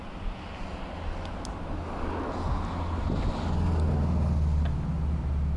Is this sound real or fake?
real